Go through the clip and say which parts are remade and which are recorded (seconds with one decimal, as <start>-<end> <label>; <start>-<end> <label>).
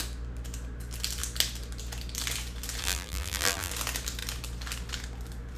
0.0-2.8 recorded; 2.8-3.7 remade; 3.7-5.6 recorded